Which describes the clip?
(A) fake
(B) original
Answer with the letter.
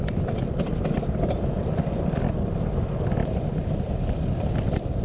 B